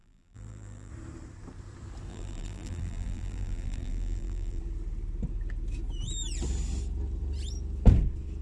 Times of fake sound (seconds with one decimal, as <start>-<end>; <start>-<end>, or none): 0.0-0.9; 2.1-4.6